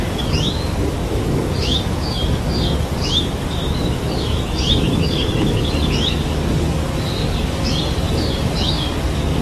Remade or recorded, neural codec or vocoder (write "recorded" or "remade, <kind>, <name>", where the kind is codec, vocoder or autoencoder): remade, codec, DAC